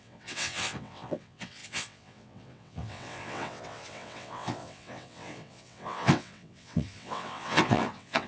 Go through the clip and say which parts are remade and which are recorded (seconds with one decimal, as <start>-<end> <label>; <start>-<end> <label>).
0.0-8.3 remade